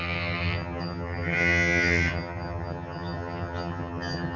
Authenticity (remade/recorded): remade